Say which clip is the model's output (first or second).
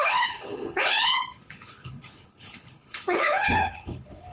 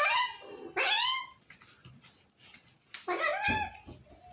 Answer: first